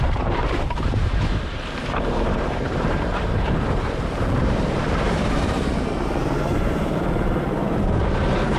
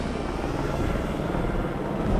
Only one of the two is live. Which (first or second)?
second